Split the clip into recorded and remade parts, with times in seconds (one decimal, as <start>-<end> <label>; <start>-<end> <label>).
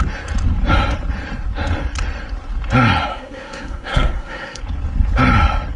0.0-3.1 recorded; 3.1-4.6 remade; 4.6-5.8 recorded